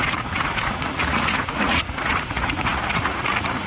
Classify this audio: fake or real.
fake